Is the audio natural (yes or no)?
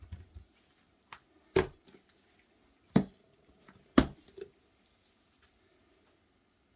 yes